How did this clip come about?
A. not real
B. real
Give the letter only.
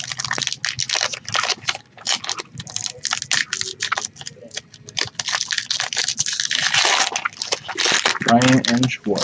B